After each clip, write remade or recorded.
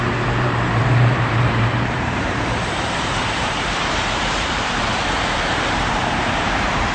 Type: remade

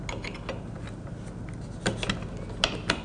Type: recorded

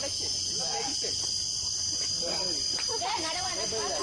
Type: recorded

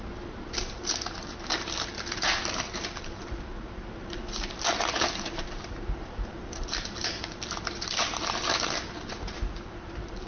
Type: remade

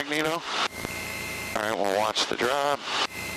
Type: remade